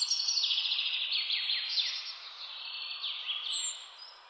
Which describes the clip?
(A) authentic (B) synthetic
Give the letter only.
A